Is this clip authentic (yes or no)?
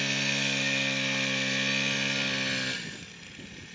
yes